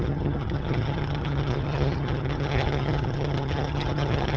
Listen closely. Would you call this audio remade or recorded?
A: remade